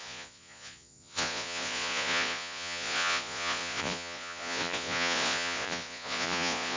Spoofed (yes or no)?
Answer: yes